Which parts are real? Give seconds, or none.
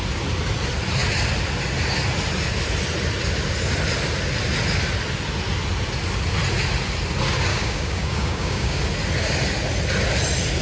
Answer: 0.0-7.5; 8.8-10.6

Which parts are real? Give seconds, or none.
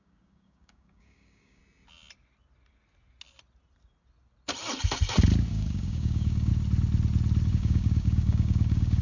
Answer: 1.6-5.5; 6.5-7.5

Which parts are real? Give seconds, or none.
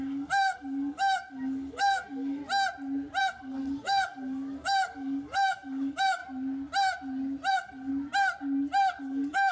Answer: 2.4-3.2; 6.2-7.5; 7.9-9.0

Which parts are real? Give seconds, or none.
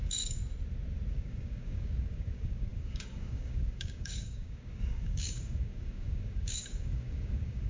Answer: 0.4-1.1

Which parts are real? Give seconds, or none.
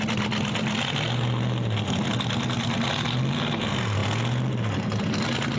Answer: 0.0-5.6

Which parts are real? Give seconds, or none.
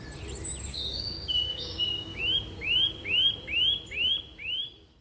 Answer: 0.0-0.7; 2.2-5.0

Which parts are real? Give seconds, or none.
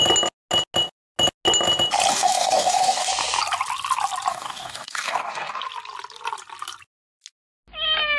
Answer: 0.0-2.1; 3.1-4.3; 5.6-8.2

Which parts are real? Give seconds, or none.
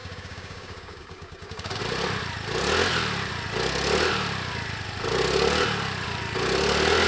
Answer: 1.8-7.1